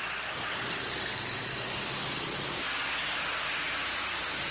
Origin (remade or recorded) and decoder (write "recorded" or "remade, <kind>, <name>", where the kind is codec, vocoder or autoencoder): recorded